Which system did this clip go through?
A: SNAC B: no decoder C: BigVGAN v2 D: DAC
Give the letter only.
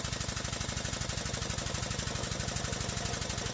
B